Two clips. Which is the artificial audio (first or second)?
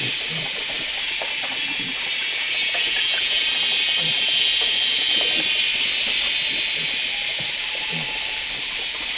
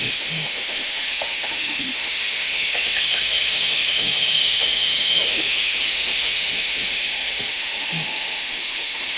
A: second